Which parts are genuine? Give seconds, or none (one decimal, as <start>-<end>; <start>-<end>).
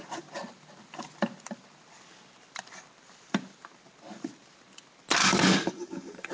0.0-5.2